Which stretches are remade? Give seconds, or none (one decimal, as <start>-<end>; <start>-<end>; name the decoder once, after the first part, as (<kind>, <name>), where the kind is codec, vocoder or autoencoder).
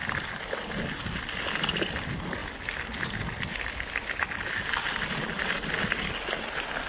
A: none